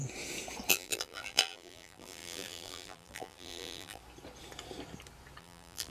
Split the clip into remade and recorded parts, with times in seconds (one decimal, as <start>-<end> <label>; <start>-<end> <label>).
0.0-0.7 recorded; 0.7-4.0 remade; 4.0-5.4 recorded; 5.4-5.9 remade